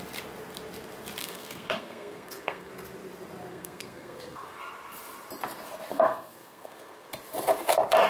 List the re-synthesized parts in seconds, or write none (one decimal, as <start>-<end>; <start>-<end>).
1.2-2.7; 3.5-4.6; 5.9-7.1